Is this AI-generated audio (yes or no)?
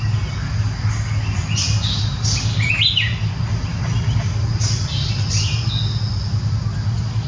no